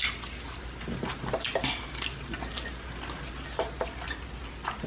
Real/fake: real